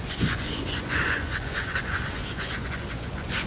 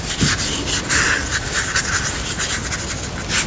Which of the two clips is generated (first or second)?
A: first